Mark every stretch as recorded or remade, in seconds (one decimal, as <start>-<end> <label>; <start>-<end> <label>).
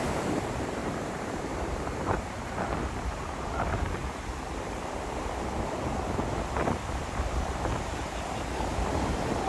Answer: 0.0-0.8 recorded; 0.8-2.6 remade; 2.6-4.0 recorded; 4.0-4.5 remade; 4.5-7.0 recorded; 7.0-7.8 remade; 7.8-9.5 recorded